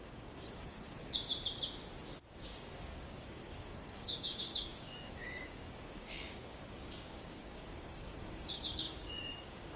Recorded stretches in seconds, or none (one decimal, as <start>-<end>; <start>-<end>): 1.3-2.3